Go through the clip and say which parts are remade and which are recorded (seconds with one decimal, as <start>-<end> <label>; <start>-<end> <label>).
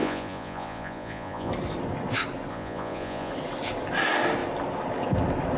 0.0-1.5 remade; 1.5-2.5 recorded; 2.5-3.3 remade; 3.3-5.6 recorded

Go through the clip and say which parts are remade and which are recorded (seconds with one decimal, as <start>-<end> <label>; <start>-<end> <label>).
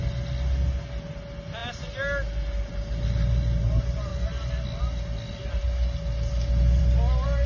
0.0-7.5 recorded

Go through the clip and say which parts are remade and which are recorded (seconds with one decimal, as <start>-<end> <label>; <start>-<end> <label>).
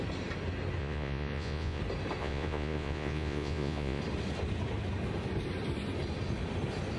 0.0-0.8 recorded; 0.8-1.8 remade; 1.8-2.2 recorded; 2.2-4.0 remade; 4.0-7.0 recorded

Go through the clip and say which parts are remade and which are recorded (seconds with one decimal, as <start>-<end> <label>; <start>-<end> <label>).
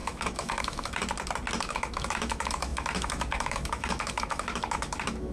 0.0-1.0 remade; 1.0-1.6 recorded; 1.6-5.3 remade